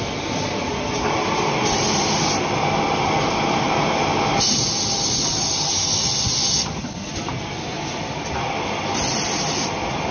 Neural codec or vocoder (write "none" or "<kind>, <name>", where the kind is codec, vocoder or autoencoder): none